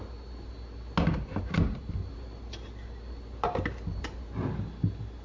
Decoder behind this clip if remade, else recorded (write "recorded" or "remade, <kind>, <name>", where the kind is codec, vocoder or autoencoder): recorded